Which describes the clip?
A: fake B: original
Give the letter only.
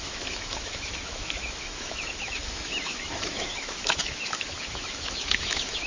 A